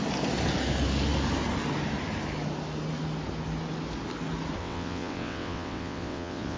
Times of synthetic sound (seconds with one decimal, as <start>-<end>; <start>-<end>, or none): 4.6-6.6